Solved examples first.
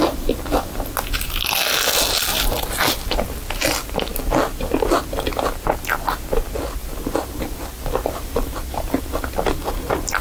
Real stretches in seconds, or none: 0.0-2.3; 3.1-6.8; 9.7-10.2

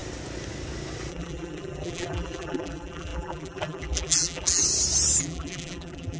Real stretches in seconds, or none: 0.0-1.1; 4.6-5.2

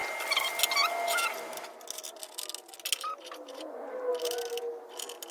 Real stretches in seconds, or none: 0.0-5.3

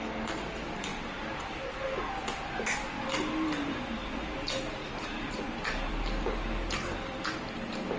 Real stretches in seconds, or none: 0.0-0.9; 1.5-4.8; 5.9-8.0

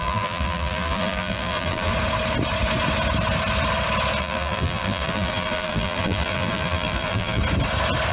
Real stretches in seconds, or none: 1.9-4.2; 7.4-8.1

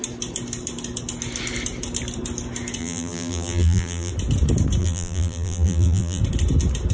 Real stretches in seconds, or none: 0.0-2.8; 4.1-4.8; 6.2-6.9